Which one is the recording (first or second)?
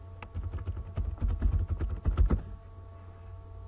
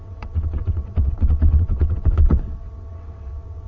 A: first